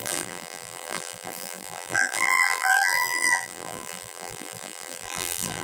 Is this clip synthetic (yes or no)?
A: yes